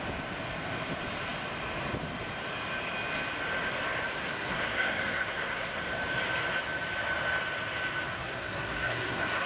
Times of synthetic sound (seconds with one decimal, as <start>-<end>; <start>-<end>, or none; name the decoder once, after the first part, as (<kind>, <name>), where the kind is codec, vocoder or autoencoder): 4.2-5.8 (codec, SNAC); 8.1-9.5